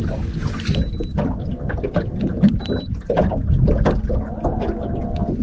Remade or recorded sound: recorded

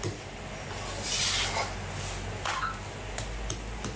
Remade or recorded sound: recorded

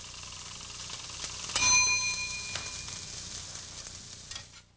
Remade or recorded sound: recorded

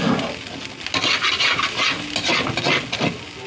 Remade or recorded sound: recorded